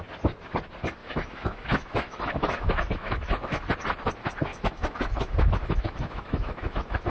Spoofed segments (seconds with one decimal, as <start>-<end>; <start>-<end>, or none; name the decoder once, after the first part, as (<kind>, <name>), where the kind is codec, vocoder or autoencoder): 1.0-3.6 (autoencoder, DAC-VAE); 4.5-7.1